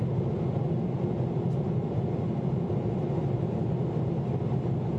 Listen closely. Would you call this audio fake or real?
real